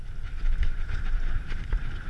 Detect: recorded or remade recorded